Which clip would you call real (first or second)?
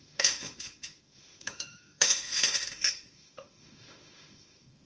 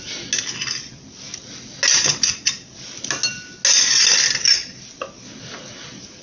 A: second